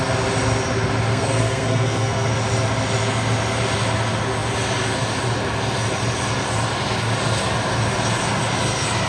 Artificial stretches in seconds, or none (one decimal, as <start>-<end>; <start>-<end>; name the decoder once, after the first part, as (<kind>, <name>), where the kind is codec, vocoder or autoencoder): 1.1-2.3 (codec, SNAC)